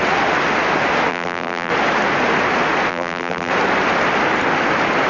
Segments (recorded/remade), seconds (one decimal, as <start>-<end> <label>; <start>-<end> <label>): 0.0-1.1 recorded; 1.1-1.7 remade; 1.7-2.9 recorded; 2.9-3.5 remade; 3.5-5.1 recorded